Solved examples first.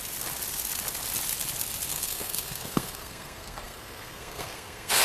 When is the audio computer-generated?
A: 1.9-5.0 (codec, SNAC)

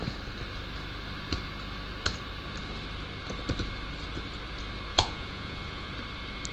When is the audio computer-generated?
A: 4.9-5.9 (vocoder, Vocos)

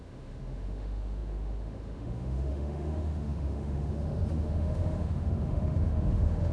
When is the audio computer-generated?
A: 0.0-6.5 (autoencoder, DAC-VAE)